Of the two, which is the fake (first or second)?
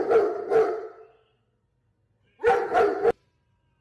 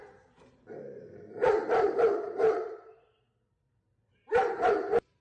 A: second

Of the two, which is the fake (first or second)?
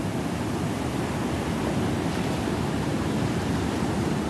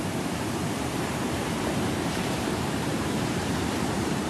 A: second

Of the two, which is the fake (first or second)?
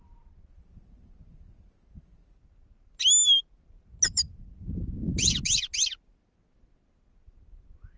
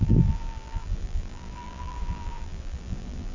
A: second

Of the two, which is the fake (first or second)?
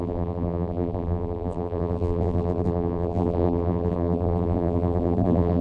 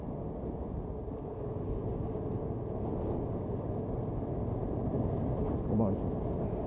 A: first